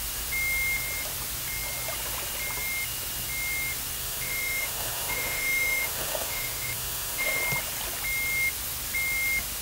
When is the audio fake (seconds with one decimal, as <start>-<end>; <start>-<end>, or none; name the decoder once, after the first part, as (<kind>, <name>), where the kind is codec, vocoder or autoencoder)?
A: 4.0-7.4 (autoencoder, DAC-VAE)